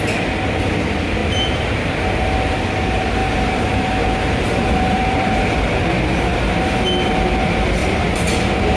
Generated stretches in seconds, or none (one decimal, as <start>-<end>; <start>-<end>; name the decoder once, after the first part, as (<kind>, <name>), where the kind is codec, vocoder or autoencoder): 1.2-2.0 (vocoder, BigVGAN v2); 3.2-5.4; 7.8-8.3

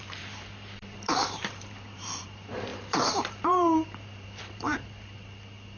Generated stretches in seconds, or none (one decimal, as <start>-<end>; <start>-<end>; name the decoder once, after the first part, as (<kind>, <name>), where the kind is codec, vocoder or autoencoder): 0.0-5.8 (vocoder, BigVGAN v2)

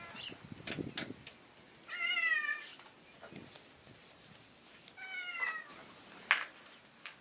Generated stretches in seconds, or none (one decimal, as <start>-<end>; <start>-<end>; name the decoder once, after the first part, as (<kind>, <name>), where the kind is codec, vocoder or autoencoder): none

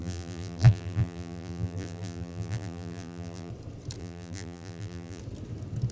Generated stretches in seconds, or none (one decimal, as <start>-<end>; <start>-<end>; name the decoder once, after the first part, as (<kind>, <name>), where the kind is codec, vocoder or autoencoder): 0.0-3.5 (vocoder, BigVGAN v2); 4.0-5.2

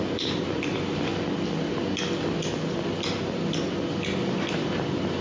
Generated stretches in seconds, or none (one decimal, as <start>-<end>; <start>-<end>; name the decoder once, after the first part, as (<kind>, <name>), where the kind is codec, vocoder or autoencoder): 0.0-1.1 (vocoder, BigVGAN v2); 4.0-5.2